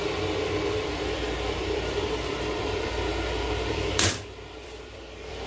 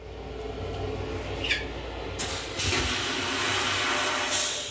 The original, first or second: second